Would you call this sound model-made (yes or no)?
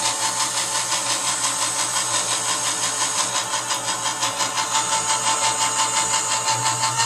no